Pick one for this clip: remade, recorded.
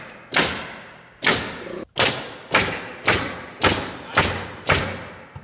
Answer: recorded